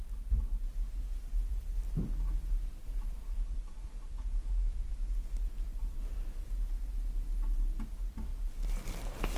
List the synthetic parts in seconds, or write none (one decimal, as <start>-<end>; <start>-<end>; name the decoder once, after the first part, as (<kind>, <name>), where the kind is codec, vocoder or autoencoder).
2.8-6.0 (vocoder, BigVGAN v2)